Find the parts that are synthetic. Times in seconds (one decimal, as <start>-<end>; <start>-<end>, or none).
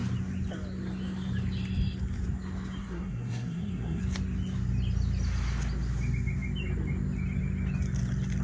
2.8-4.0